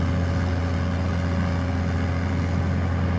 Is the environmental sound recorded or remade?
recorded